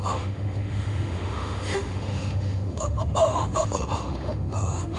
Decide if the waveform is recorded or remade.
remade